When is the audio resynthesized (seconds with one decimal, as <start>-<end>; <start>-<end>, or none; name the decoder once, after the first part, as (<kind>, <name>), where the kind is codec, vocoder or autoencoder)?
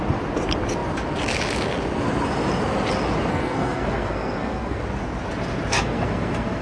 3.3-4.8 (codec, SNAC); 5.7-6.6